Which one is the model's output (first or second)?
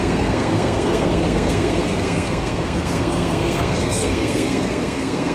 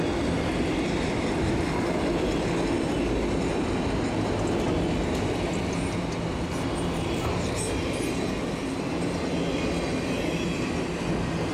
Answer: first